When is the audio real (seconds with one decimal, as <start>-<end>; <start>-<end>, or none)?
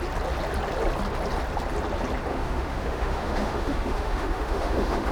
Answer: 0.0-2.3